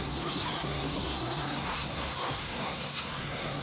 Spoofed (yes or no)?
yes